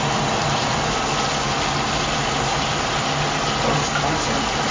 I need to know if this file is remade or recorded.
recorded